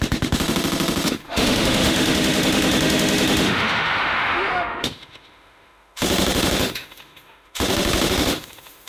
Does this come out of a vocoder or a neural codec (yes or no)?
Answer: yes